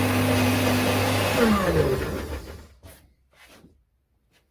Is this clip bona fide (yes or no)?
yes